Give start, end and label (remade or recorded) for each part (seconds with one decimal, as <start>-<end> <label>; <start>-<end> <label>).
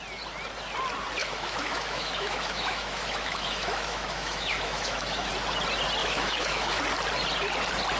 0.0-1.2 recorded; 1.2-5.3 remade; 5.3-6.0 recorded; 6.0-6.8 remade; 6.8-8.0 recorded